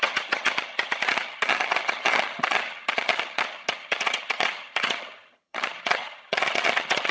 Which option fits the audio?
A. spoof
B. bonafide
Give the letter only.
A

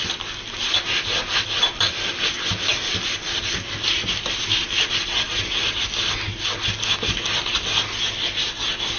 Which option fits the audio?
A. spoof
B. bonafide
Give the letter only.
B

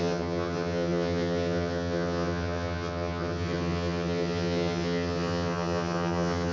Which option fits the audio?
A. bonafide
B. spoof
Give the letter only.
B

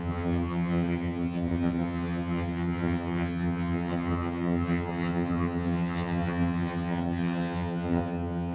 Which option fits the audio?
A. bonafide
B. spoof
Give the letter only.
B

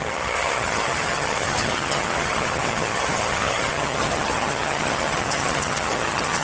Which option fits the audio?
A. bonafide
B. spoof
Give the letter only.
B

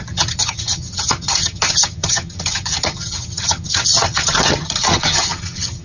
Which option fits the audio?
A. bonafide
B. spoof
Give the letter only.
B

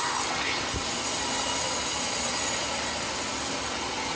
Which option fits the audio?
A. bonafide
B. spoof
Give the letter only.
A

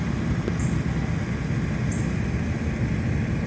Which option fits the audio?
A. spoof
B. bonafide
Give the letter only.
B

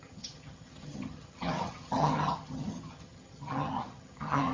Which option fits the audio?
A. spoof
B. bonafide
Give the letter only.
A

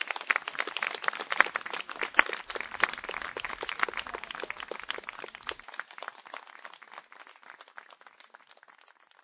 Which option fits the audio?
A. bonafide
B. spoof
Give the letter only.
A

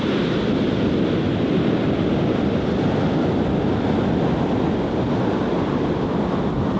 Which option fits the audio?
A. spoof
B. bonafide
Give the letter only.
B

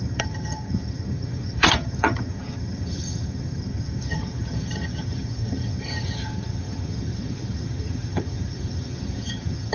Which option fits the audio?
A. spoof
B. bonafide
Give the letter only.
A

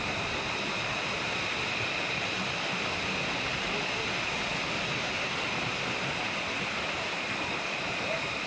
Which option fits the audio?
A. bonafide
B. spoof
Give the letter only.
A